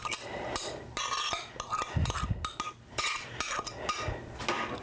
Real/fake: real